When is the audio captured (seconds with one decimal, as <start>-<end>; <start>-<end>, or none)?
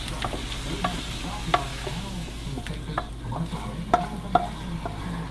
0.0-1.7; 2.6-5.3